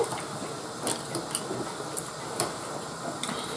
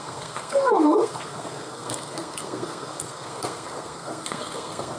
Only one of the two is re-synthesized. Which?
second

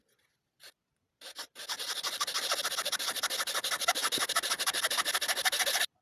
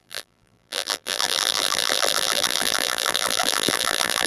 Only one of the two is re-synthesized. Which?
second